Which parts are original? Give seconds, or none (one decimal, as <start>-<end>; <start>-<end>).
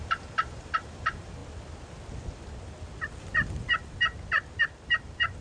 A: 1.4-4.6